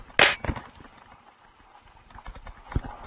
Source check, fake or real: real